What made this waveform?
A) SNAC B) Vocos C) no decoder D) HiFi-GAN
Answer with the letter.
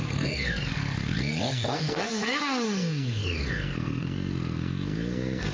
A